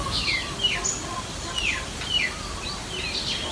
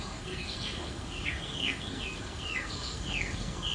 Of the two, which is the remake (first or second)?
second